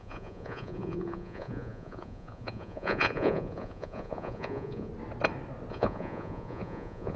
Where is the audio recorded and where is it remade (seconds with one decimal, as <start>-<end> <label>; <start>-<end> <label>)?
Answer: 0.0-4.9 remade; 4.9-5.7 recorded; 5.7-7.2 remade